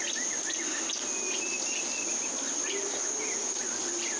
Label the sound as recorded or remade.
recorded